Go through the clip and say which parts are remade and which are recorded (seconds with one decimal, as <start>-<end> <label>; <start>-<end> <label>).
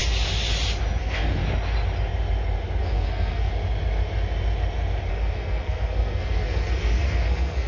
0.0-1.0 recorded; 1.0-1.4 remade; 1.4-2.8 recorded; 2.8-3.5 remade; 3.5-5.1 recorded; 5.1-7.7 remade